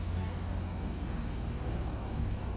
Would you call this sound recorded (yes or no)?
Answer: no